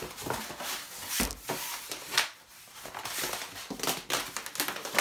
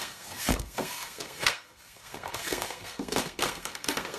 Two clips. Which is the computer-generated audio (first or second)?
second